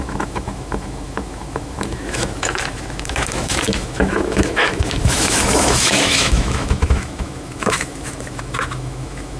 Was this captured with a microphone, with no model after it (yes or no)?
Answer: no